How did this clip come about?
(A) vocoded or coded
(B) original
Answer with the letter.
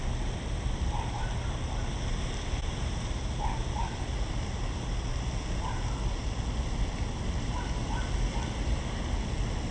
B